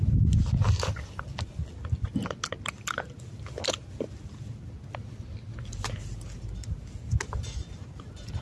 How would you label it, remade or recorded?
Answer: recorded